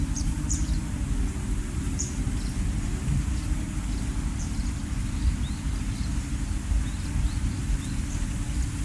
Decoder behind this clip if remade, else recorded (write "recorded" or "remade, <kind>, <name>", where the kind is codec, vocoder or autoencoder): remade, vocoder, BigVGAN v2